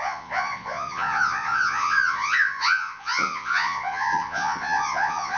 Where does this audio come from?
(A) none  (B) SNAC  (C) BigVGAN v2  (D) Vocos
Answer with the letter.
D